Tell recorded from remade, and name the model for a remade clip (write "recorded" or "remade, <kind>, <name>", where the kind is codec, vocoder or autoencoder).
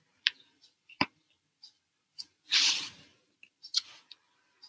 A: remade, vocoder, BigVGAN v2